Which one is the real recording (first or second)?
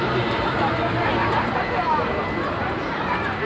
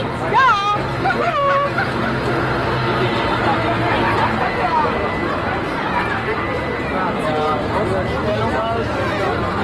second